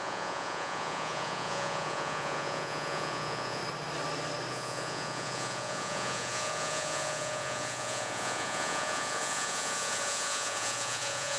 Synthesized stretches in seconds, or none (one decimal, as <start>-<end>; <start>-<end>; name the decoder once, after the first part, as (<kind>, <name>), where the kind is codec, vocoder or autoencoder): 0.0-3.6 (vocoder, Vocos); 4.5-11.4